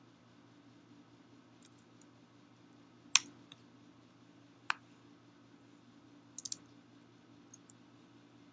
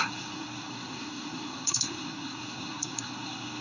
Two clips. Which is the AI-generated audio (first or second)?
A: second